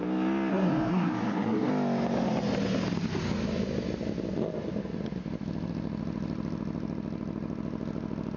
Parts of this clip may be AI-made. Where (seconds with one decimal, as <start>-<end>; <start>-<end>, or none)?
0.5-1.7